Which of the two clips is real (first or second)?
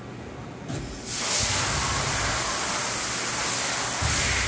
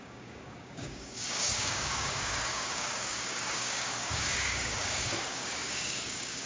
first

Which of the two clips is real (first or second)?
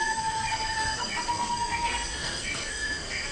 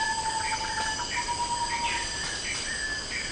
second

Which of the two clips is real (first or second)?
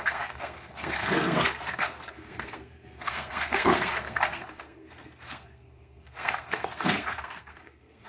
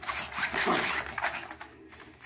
second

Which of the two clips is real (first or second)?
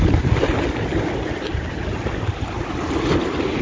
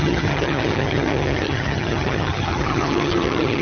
first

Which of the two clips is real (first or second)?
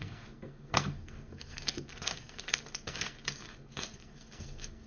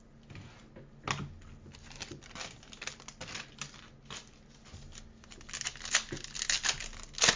second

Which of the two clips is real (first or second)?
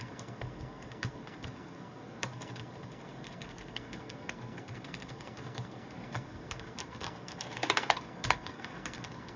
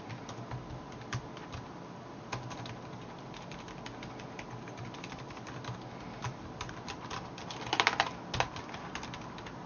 second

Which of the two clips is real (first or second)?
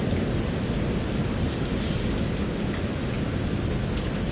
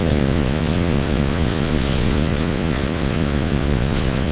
first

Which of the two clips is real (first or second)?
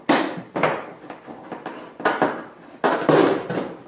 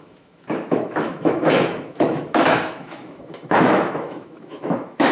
first